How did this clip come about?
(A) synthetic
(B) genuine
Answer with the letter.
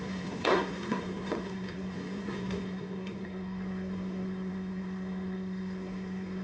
A